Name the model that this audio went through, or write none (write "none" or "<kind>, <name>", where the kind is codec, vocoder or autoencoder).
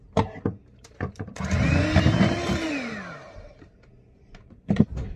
vocoder, BigVGAN v2